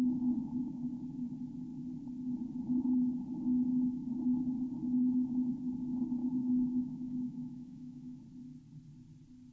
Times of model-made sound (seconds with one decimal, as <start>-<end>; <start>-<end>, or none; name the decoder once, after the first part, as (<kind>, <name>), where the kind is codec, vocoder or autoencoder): 0.4-0.9 (autoencoder, DAC-VAE); 6.2-8.2